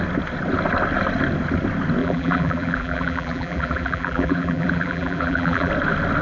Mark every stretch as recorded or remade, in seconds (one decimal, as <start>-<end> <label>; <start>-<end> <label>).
0.0-2.0 recorded; 2.0-5.7 remade; 5.7-6.2 recorded